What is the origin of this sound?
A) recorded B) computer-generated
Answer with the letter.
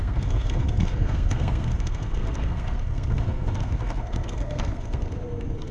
B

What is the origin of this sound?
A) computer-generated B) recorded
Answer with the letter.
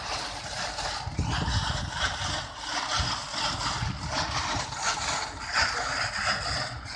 B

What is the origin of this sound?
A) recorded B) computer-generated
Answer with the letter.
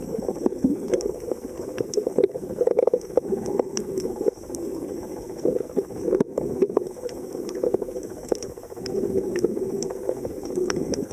B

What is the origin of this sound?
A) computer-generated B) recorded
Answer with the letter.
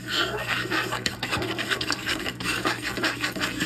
A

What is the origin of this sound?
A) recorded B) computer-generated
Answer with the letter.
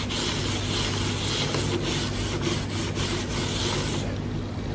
A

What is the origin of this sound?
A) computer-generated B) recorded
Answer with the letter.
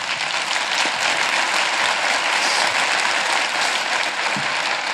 B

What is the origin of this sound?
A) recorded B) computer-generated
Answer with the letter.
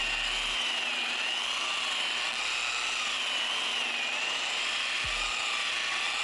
A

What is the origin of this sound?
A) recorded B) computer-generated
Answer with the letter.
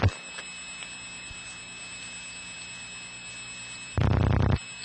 A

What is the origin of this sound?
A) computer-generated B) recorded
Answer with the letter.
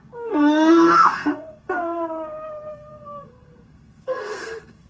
A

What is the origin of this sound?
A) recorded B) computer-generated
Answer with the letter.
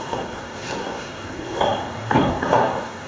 B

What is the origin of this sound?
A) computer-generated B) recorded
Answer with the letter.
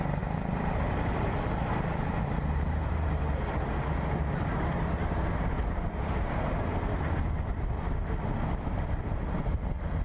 B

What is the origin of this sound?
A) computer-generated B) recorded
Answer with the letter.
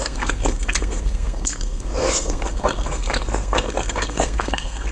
A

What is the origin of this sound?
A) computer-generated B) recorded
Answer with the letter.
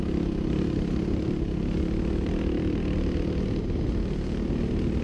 B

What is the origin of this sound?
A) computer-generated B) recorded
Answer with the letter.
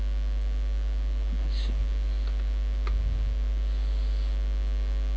B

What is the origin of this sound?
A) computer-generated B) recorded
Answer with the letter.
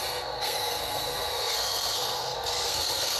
A